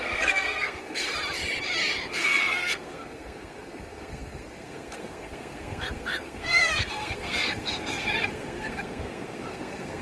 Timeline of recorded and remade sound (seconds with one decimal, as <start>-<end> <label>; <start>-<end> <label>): 0.0-1.1 remade; 1.1-2.1 recorded; 2.1-10.0 remade